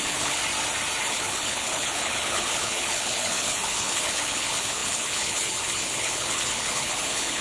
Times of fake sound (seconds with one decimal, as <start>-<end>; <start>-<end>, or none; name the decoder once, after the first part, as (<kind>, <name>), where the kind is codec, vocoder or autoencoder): 0.0-0.4 (codec, HILCodec); 1.0-7.4